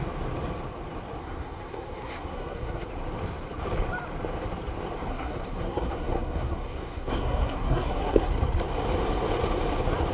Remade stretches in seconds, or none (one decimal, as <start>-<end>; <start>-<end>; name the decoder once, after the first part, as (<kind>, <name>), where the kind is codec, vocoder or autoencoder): 1.2-2.9 (codec, SNAC); 5.1-8.3